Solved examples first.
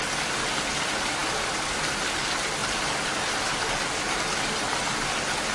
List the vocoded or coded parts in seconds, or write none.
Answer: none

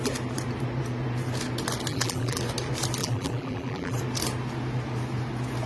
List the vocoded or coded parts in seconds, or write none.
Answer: 1.9-2.4 (vocoder, BigVGAN v2); 3.0-4.0

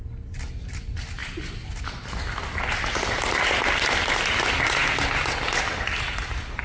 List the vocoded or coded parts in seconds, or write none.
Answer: none

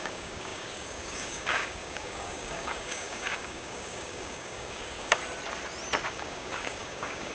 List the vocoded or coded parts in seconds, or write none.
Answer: 0.0-5.2 (codec, DAC); 6.1-7.3